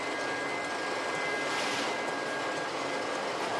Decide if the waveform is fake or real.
real